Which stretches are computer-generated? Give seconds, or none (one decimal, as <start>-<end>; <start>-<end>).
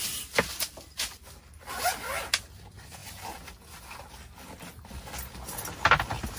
none